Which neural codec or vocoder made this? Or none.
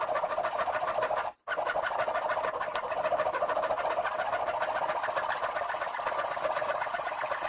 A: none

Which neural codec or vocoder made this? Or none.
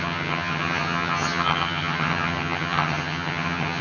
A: vocoder, HiFi-GAN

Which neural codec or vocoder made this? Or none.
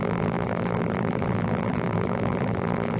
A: vocoder, BigVGAN v2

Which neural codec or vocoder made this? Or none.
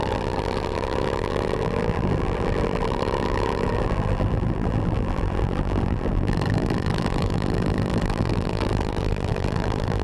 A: vocoder, BigVGAN v2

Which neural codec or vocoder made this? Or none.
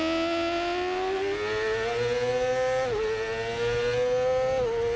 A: none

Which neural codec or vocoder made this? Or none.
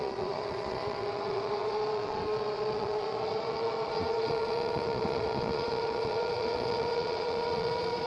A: vocoder, Vocos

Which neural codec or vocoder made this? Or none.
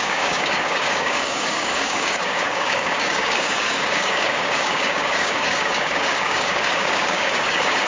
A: codec, DAC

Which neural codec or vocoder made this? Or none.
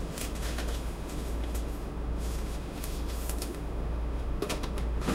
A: autoencoder, DAC-VAE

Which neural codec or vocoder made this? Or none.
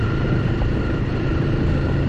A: none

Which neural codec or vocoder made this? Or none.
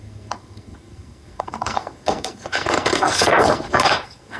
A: codec, SNAC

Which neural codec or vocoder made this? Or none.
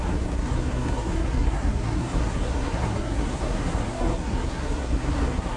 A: codec, SNAC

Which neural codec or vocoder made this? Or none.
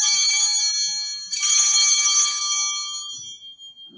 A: none